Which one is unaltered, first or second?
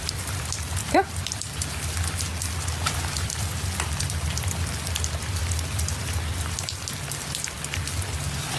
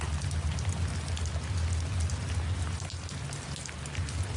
second